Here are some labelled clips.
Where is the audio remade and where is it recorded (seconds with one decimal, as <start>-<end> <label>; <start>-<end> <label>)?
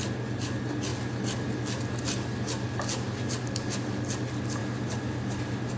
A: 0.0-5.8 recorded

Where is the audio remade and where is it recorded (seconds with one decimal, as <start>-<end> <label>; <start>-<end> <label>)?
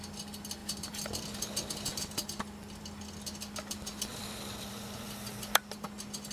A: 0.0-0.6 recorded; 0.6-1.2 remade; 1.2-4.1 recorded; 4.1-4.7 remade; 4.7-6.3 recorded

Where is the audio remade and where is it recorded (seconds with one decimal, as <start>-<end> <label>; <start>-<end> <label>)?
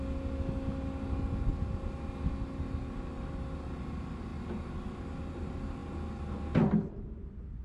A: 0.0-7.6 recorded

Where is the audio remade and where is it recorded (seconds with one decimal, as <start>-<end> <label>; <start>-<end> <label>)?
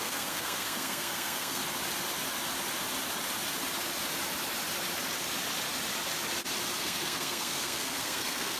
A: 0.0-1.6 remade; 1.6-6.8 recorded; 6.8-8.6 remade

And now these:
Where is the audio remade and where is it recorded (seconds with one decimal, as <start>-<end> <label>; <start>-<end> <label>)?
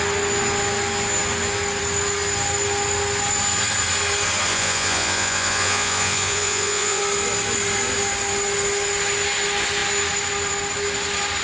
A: 0.0-4.5 recorded; 4.5-7.0 remade; 7.0-11.4 recorded